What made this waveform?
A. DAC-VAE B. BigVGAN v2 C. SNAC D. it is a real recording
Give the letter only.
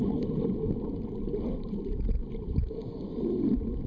D